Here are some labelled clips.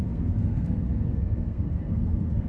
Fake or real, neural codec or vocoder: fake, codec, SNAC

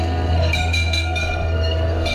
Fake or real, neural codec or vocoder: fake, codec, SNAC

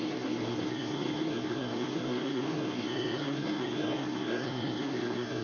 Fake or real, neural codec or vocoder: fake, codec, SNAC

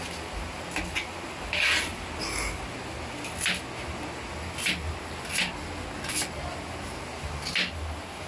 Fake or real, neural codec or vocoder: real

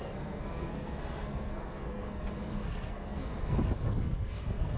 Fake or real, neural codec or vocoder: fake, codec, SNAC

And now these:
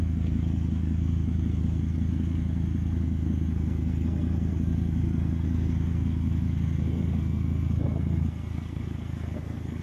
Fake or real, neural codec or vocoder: fake, codec, SNAC